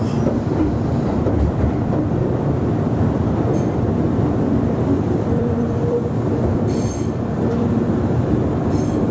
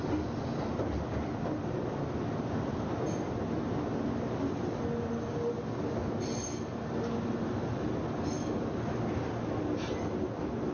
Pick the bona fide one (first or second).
second